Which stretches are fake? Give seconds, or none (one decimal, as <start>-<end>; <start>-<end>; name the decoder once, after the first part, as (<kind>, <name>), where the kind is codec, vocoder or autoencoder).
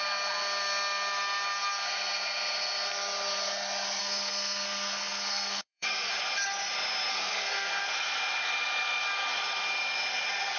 4.0-6.1 (codec, SNAC); 7.1-7.8